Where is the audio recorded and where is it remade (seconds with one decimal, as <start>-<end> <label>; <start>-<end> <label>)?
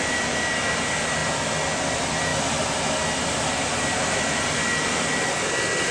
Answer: 0.0-5.9 recorded